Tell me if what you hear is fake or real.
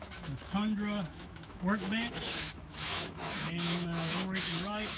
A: fake